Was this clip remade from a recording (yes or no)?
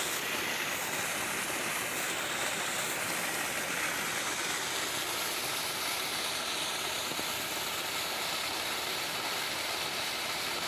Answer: no